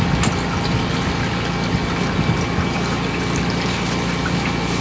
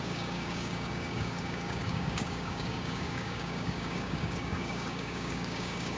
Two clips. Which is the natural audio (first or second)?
first